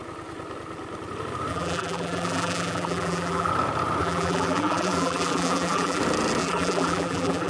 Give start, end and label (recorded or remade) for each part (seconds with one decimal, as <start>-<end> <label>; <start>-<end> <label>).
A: 0.0-1.5 recorded; 1.5-3.5 remade; 3.5-4.0 recorded; 4.0-6.0 remade; 6.0-6.4 recorded; 6.4-7.5 remade